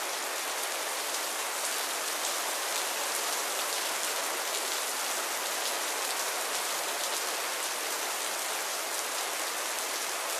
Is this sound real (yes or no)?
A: yes